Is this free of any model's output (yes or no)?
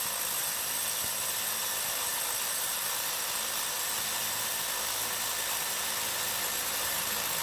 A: yes